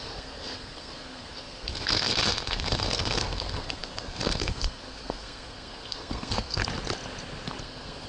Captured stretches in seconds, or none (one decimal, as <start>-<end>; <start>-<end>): 6.6-7.6